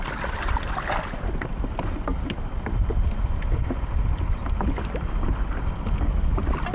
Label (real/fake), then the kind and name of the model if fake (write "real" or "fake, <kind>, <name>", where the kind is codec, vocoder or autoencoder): real